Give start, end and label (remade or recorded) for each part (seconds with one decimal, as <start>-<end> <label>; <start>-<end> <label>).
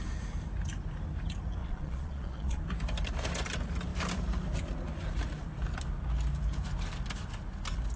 0.0-1.6 recorded; 1.6-2.6 remade; 2.6-8.0 recorded